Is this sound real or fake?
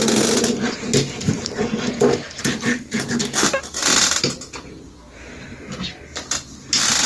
real